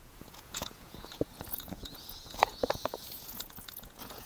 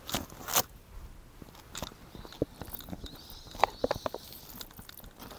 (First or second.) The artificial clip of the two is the first